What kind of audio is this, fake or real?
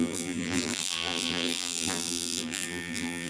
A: fake